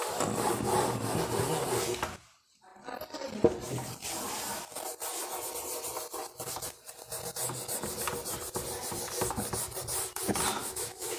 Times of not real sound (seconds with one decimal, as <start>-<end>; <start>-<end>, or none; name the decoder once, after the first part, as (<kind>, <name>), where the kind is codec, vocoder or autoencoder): 10.6-11.2 (autoencoder, DAC-VAE)